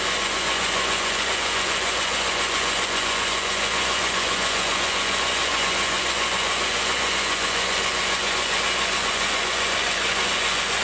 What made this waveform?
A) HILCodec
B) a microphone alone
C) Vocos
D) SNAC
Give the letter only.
C